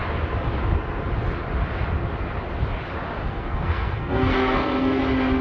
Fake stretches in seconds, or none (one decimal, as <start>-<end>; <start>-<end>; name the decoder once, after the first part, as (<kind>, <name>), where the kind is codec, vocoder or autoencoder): 3.2-5.0 (codec, SNAC)